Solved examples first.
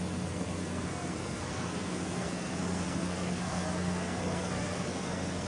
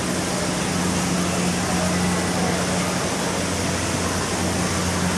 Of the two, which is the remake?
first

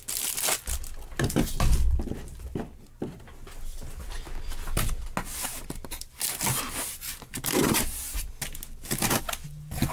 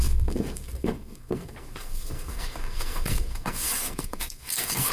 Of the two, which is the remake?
second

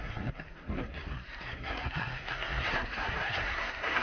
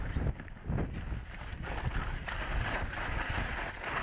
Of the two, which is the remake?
first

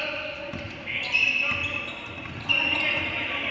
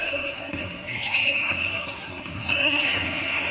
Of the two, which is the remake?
second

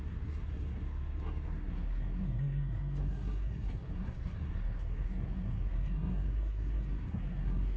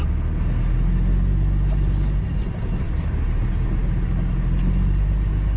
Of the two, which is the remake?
first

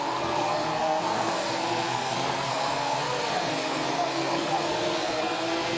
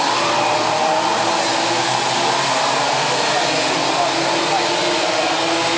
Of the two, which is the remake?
first